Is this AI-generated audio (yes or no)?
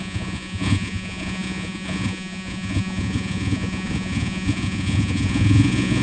yes